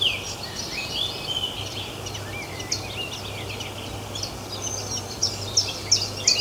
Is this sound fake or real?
real